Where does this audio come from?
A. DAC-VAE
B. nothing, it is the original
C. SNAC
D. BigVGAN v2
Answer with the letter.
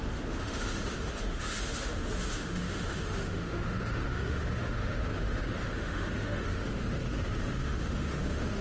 A